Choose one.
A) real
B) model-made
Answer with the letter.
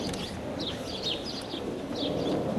A